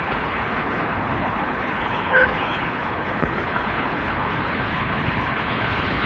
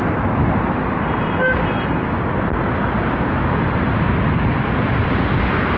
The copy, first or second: first